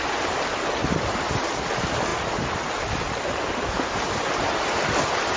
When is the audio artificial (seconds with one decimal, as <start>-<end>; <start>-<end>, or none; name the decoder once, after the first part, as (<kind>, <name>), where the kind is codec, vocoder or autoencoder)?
none